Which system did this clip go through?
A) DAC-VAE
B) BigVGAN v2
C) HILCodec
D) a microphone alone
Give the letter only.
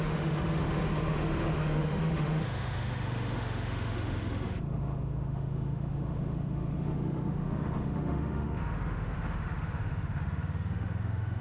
A